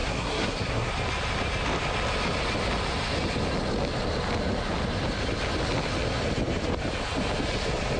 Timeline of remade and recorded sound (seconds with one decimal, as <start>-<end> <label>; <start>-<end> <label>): 0.0-0.9 remade; 0.9-8.0 recorded